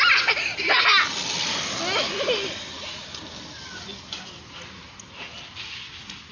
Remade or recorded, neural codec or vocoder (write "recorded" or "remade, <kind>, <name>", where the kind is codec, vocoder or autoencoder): recorded